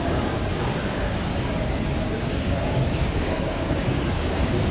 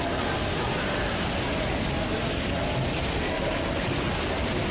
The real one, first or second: second